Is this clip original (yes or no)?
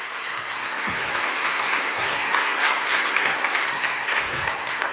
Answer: no